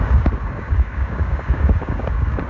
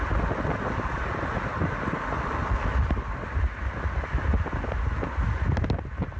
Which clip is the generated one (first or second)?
first